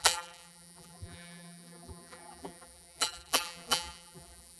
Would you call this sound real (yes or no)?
no